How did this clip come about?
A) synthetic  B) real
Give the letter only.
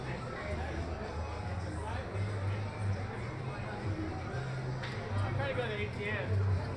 B